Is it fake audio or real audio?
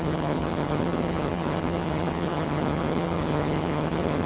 fake